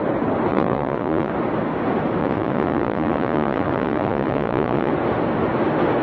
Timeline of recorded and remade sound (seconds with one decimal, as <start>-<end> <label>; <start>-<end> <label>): 0.0-0.5 recorded; 0.5-1.3 remade; 1.3-2.2 recorded; 2.2-4.9 remade; 4.9-6.0 recorded